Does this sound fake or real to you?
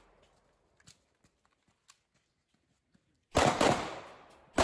real